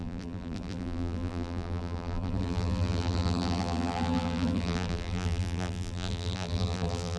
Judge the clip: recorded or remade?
remade